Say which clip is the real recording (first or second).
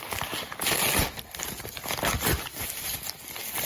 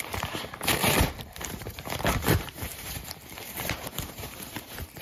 first